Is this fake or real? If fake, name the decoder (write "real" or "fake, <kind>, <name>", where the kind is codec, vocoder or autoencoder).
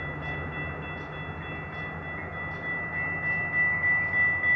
real